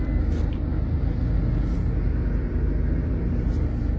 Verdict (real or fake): real